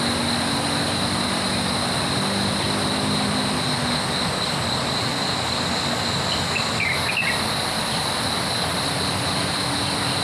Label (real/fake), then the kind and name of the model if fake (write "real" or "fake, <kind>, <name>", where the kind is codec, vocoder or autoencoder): real